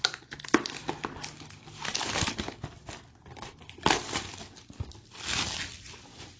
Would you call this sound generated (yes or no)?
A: no